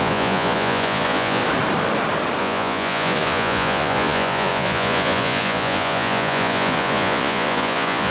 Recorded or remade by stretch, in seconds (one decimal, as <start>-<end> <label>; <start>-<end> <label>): 0.0-1.4 remade; 1.4-2.4 recorded; 2.4-8.1 remade